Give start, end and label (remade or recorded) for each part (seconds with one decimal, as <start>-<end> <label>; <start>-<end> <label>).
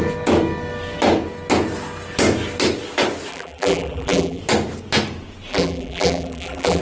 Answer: 0.0-3.3 recorded; 3.3-4.4 remade; 4.4-5.5 recorded; 5.5-6.8 remade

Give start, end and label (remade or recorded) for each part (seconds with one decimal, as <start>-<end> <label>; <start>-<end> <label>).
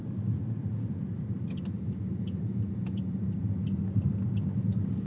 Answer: 0.0-0.4 recorded; 0.4-3.5 remade; 3.5-5.1 recorded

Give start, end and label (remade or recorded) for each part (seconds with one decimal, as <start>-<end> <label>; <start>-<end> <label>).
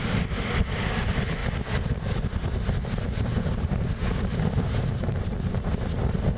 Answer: 0.0-1.4 remade; 1.4-3.0 recorded; 3.0-6.4 remade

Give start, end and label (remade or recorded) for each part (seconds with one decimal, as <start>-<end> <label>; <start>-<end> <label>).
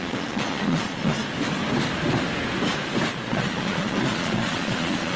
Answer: 0.0-1.2 remade; 1.2-3.1 recorded; 3.1-5.2 remade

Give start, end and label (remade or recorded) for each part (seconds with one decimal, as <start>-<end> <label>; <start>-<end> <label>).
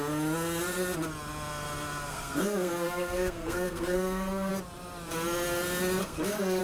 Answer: 0.0-2.1 recorded; 2.1-4.5 remade; 4.5-6.0 recorded; 6.0-6.6 remade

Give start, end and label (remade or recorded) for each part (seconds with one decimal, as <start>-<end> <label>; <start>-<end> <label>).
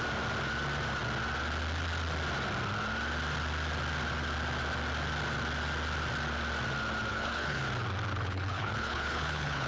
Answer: 0.0-7.1 recorded; 7.1-7.6 remade; 7.6-8.1 recorded; 8.1-9.7 remade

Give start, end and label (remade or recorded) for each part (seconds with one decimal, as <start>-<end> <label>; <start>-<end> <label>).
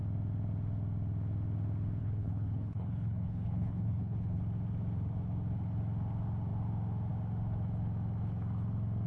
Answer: 0.0-2.0 recorded; 2.0-4.4 remade; 4.4-9.1 recorded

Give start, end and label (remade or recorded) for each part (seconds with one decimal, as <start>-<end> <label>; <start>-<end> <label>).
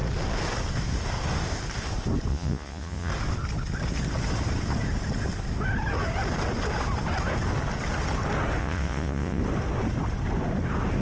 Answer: 0.0-2.3 recorded; 2.3-3.1 remade; 3.1-8.6 recorded; 8.6-9.4 remade; 9.4-11.0 recorded